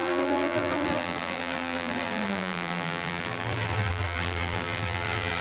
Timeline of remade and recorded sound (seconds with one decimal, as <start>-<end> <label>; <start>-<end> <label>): 0.0-5.4 remade